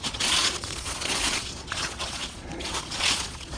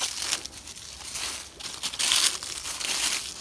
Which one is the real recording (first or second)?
second